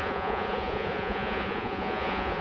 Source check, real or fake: fake